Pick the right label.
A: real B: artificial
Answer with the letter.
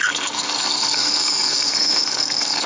B